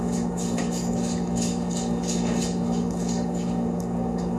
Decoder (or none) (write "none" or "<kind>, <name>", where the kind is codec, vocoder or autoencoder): codec, DAC